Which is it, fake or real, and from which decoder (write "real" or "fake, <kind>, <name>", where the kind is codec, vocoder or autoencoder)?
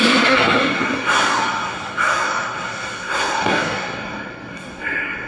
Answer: fake, codec, SNAC